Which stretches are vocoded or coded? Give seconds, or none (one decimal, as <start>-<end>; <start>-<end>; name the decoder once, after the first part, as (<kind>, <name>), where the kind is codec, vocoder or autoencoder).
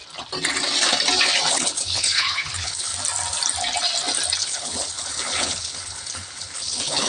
1.5-2.9 (codec, HILCodec); 4.4-7.1